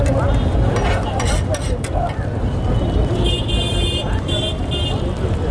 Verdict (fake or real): fake